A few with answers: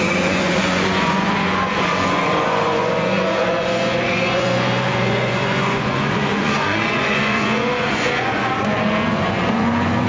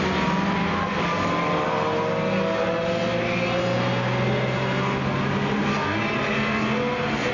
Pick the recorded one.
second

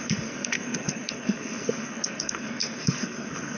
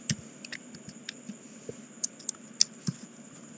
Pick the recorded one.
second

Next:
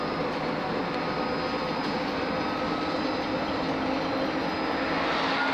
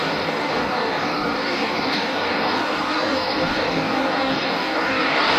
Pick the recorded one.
first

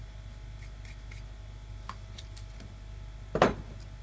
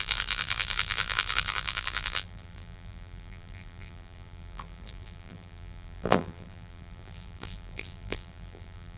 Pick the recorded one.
first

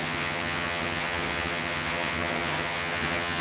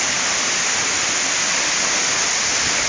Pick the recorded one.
second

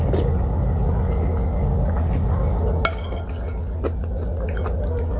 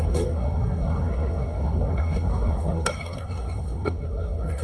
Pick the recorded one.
first